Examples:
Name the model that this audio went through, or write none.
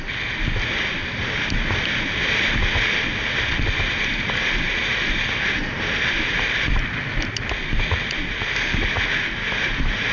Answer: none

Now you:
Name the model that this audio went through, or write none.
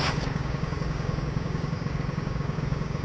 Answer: codec, DAC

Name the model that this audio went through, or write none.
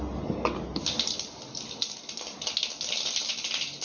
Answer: none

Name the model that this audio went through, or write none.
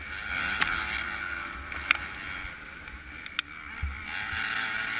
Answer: none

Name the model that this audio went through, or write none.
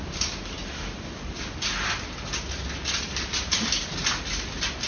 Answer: none